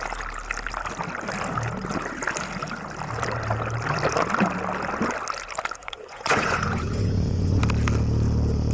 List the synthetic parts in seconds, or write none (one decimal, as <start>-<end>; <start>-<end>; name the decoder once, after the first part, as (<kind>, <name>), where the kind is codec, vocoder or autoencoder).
5.8-7.6 (vocoder, Vocos)